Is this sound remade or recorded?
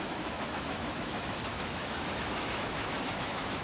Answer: remade